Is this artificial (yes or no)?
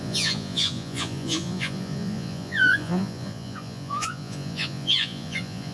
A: yes